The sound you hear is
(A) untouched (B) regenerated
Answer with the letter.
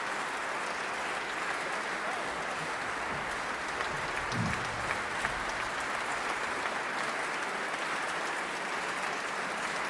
A